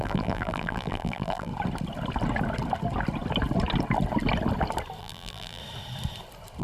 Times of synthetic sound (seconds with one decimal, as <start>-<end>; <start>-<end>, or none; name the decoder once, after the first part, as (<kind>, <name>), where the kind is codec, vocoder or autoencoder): 0.0-1.5 (vocoder, BigVGAN v2); 5.0-5.6